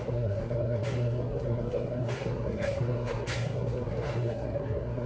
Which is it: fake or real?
fake